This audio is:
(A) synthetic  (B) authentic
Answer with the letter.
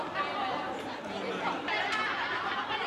A